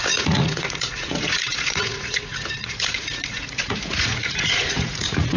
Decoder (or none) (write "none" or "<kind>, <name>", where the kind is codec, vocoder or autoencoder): vocoder, Vocos